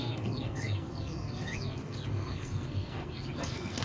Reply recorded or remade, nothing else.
remade